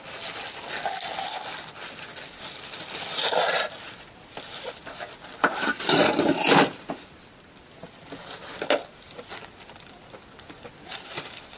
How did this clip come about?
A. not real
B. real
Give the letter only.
B